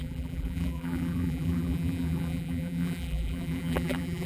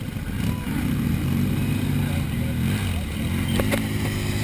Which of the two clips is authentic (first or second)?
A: second